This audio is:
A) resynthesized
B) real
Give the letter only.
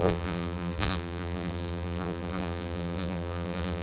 A